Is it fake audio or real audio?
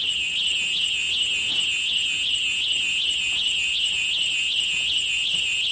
real